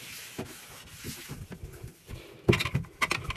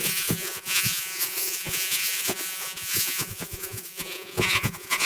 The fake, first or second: second